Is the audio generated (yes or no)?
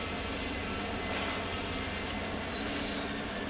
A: no